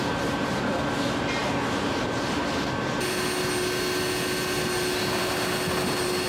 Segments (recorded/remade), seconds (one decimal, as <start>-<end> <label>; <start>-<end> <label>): 0.0-6.3 recorded